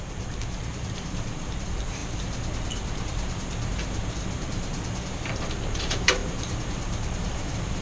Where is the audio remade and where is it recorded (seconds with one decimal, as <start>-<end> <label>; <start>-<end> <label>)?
0.0-7.8 remade